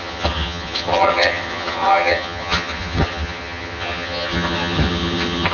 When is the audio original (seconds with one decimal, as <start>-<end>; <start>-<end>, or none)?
none